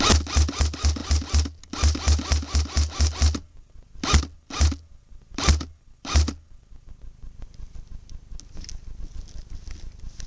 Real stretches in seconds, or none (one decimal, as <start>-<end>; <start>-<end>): 0.0-10.3